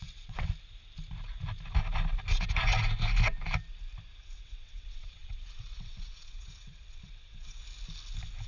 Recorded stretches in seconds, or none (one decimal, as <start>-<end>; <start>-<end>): 0.5-4.2; 7.6-8.5